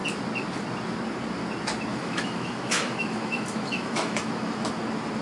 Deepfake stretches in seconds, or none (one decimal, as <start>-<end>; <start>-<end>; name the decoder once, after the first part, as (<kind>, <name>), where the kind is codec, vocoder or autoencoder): 1.9-4.7 (autoencoder, DAC-VAE)